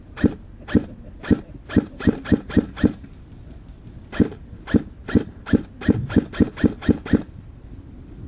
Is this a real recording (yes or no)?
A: yes